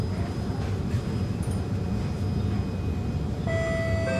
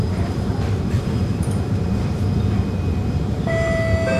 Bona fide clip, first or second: first